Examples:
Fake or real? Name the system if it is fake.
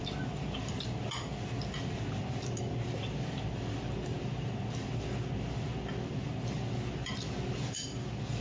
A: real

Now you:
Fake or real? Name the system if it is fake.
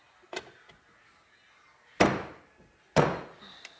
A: real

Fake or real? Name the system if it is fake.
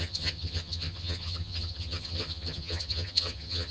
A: fake, vocoder, HiFi-GAN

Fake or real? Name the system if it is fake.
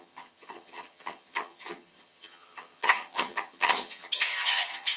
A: fake, vocoder, HiFi-GAN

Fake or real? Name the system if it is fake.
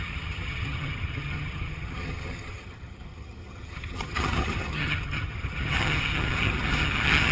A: fake, vocoder, HiFi-GAN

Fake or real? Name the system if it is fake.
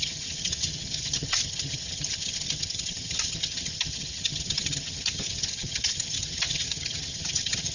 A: fake, vocoder, HiFi-GAN